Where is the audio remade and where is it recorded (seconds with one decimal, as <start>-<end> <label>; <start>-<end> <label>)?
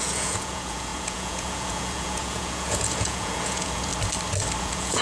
0.0-3.9 remade; 3.9-4.6 recorded; 4.6-5.0 remade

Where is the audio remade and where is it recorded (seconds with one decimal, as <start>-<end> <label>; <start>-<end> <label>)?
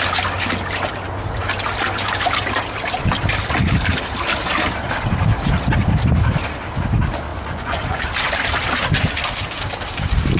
0.0-7.3 recorded; 7.3-8.0 remade; 8.0-10.4 recorded